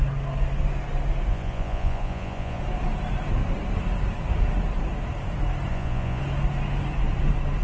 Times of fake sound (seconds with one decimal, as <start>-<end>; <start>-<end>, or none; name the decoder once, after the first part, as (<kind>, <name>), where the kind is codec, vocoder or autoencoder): 1.3-2.6 (vocoder, Vocos); 5.7-6.2